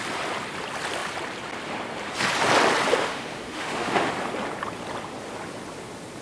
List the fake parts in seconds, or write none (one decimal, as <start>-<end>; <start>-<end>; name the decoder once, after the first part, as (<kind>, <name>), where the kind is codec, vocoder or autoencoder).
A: 3.0-4.1 (autoencoder, DAC-VAE)